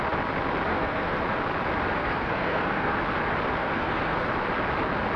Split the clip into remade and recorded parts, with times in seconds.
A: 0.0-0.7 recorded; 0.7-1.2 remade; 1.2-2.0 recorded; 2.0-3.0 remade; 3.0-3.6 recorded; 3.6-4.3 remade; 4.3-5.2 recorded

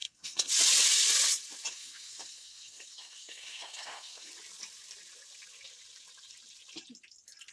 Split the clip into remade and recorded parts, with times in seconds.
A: 0.0-0.5 remade; 0.5-1.7 recorded; 1.7-4.3 remade; 4.3-7.5 recorded

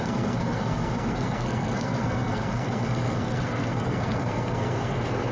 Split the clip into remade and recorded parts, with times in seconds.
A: 0.0-5.3 remade

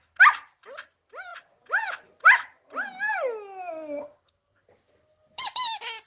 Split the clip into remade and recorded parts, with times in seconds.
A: 0.0-6.1 recorded

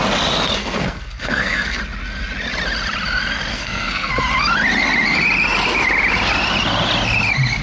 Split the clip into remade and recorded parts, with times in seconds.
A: 0.0-0.6 recorded; 0.6-1.8 remade; 1.8-3.5 recorded; 3.5-4.1 remade; 4.1-7.6 recorded

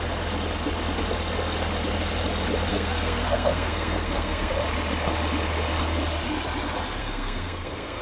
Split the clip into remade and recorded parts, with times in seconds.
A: 0.0-2.7 recorded; 2.7-4.5 remade; 4.5-7.0 recorded; 7.0-8.0 remade

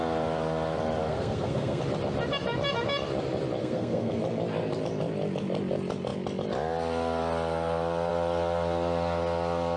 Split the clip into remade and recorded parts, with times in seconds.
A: 0.0-1.0 recorded; 1.0-1.8 remade; 1.8-3.6 recorded; 3.6-4.1 remade; 4.1-9.8 recorded